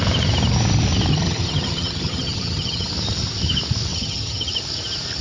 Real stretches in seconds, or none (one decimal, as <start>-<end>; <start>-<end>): 0.0-1.1; 2.9-3.9; 4.5-5.2